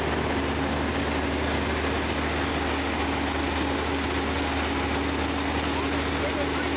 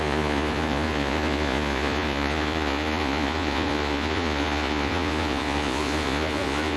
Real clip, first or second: first